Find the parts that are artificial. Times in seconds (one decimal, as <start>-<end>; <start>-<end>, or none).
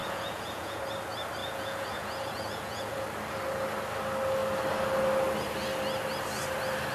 0.0-0.8; 1.4-3.0